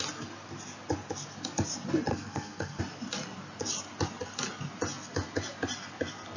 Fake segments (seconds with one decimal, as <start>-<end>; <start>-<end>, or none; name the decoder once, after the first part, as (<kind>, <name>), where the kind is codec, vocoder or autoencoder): 2.1-2.8 (codec, SNAC)